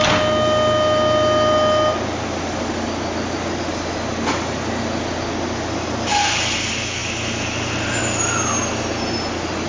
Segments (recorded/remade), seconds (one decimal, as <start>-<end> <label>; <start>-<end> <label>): 0.0-9.7 recorded